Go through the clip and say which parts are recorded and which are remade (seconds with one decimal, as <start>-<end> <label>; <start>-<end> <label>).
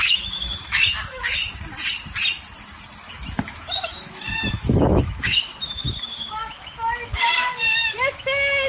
0.0-1.4 remade; 1.4-3.1 recorded; 3.1-8.7 remade